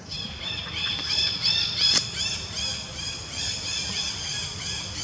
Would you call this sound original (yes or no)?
no